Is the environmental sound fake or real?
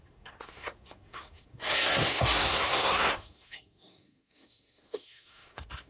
fake